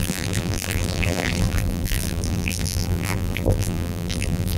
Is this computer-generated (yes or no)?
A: yes